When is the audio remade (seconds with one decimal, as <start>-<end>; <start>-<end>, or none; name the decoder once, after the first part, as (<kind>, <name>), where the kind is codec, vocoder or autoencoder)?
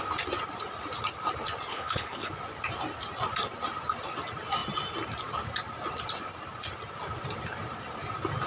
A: 1.7-2.3 (codec, HILCodec)